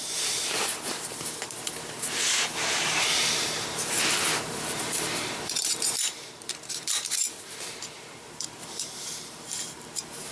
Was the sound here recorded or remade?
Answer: remade